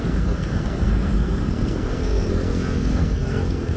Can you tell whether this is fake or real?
fake